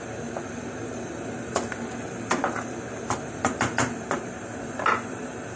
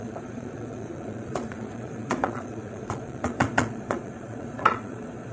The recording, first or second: first